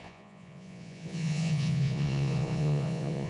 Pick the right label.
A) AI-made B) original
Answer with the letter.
A